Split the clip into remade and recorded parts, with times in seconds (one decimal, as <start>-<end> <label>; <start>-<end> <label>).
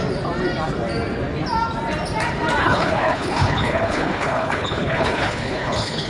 0.0-2.6 recorded; 2.6-6.1 remade